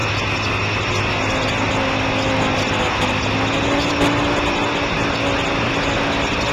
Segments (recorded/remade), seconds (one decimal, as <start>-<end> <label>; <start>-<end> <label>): 0.0-6.5 recorded